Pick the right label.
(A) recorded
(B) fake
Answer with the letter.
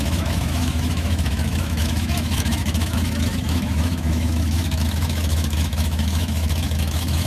B